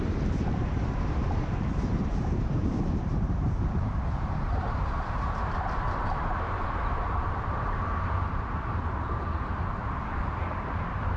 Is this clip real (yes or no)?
no